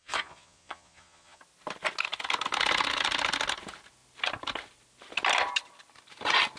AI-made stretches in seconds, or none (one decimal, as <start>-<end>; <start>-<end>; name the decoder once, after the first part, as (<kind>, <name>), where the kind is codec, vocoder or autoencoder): 0.0-1.4 (vocoder, Vocos)